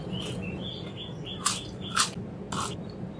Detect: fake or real real